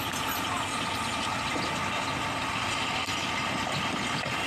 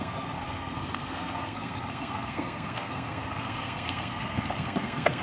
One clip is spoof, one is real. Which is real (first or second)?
first